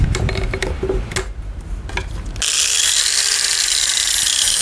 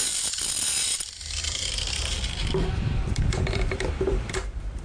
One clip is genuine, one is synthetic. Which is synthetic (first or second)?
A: second